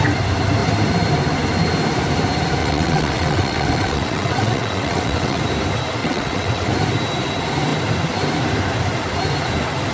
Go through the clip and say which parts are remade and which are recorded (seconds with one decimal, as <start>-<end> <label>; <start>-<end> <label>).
0.0-2.6 recorded; 2.6-5.4 remade; 5.4-6.0 recorded; 6.0-6.7 remade; 6.7-9.9 recorded